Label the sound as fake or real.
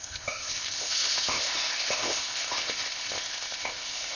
fake